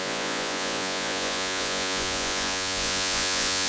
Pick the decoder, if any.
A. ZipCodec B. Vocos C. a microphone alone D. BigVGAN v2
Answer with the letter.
B